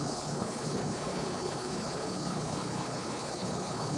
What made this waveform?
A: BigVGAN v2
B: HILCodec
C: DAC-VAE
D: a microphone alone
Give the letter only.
B